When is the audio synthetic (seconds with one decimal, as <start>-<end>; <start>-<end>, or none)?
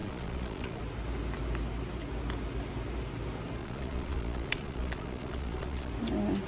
0.0-0.8; 3.6-5.9